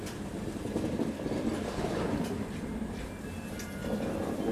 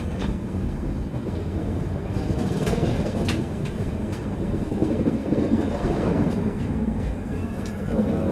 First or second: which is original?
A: first